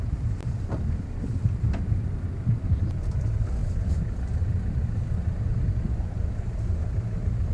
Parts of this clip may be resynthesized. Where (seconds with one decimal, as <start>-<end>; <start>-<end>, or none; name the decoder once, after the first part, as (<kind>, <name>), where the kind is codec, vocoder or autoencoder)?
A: none